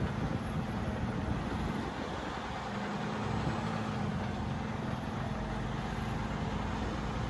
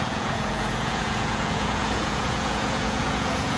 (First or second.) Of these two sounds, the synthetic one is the second